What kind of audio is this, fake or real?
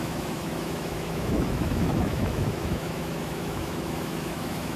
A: fake